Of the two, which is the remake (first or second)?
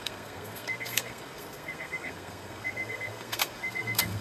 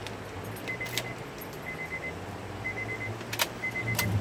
first